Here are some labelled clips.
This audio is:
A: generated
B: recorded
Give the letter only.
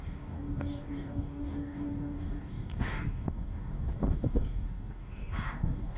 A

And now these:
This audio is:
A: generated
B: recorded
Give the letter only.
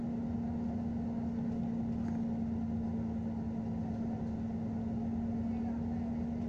B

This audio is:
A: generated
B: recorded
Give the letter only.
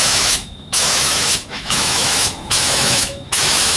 A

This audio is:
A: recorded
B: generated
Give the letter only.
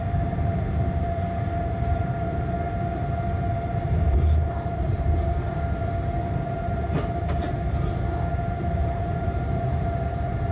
B